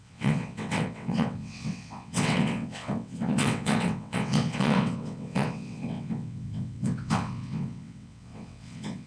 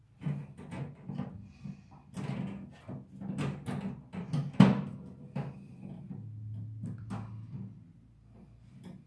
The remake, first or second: first